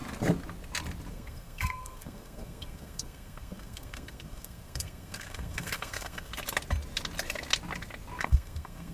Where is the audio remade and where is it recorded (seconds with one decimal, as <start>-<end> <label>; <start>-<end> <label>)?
0.0-1.1 recorded; 1.1-6.3 remade; 6.3-8.2 recorded; 8.2-8.9 remade